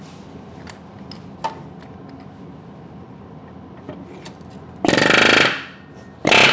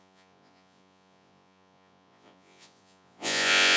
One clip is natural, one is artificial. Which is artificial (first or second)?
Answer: second